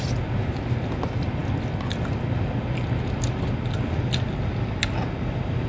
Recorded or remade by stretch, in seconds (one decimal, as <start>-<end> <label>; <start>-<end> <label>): 0.0-5.7 recorded